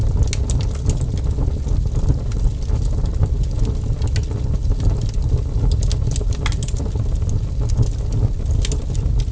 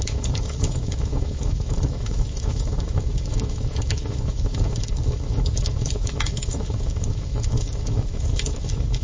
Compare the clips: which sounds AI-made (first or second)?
second